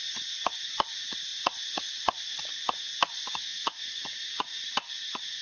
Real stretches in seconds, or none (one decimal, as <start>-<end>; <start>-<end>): 0.0-1.3; 2.6-3.5; 4.6-5.4